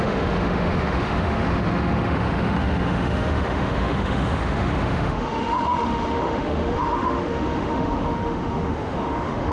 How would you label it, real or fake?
fake